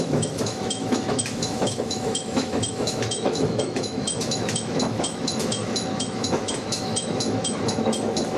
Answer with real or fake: fake